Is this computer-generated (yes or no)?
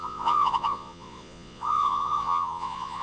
yes